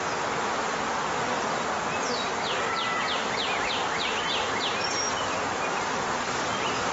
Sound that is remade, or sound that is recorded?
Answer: recorded